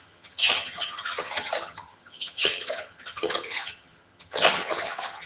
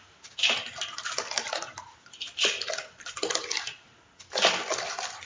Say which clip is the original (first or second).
second